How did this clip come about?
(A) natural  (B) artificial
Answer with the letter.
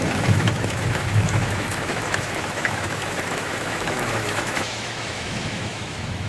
B